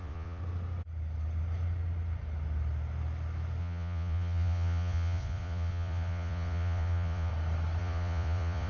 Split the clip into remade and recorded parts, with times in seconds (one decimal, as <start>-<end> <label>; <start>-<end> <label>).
0.0-0.4 remade; 0.4-3.6 recorded; 3.6-7.3 remade; 7.3-7.8 recorded; 7.8-8.7 remade